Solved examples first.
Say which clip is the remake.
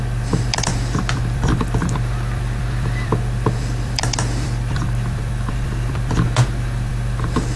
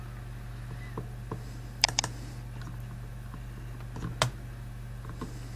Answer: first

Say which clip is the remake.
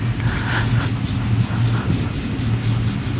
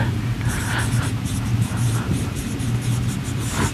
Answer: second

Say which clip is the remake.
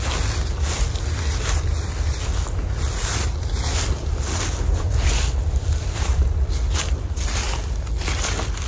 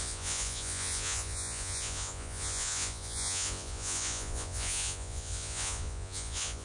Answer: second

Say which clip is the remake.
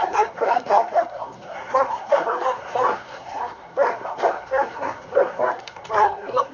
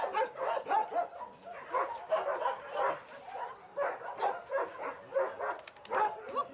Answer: first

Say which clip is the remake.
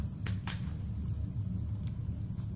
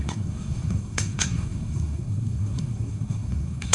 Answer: second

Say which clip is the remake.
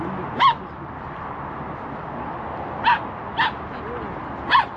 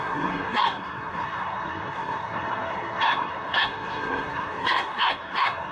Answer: second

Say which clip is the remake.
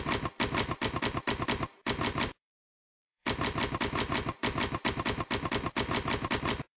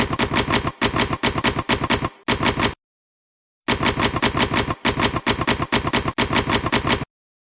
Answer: first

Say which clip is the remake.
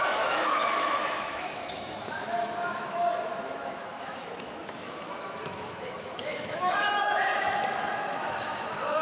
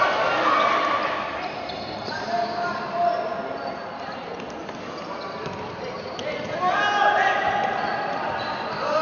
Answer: first